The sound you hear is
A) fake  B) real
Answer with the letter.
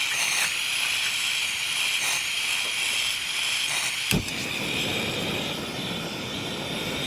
B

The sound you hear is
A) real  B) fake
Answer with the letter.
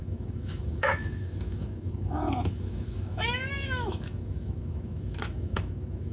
B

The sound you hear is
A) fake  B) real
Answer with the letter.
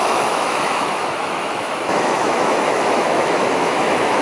A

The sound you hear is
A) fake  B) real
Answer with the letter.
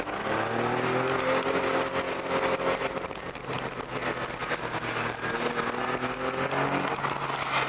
B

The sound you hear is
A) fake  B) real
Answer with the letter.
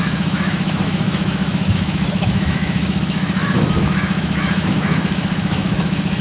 A